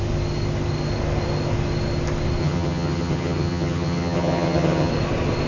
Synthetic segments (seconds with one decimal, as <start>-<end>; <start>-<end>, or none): 2.4-4.9